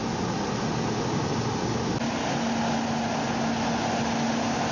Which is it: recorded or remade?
recorded